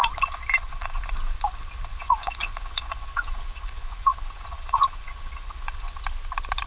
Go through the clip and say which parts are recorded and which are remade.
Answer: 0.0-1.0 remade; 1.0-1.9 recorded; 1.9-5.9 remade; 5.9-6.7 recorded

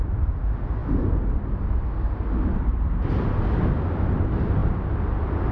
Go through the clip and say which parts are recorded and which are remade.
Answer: 0.0-2.5 recorded; 2.5-3.1 remade; 3.1-5.5 recorded